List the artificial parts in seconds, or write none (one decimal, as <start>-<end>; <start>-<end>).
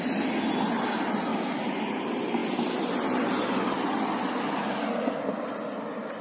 1.3-1.8